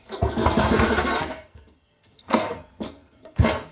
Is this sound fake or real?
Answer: fake